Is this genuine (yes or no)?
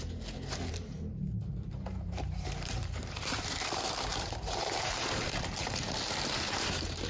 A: no